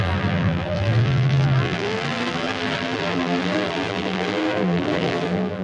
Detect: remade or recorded remade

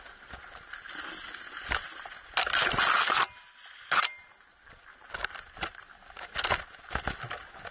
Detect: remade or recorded recorded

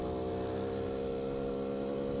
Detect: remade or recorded recorded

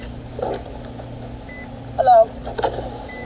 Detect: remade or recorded recorded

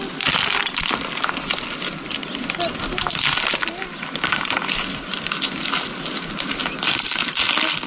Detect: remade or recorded recorded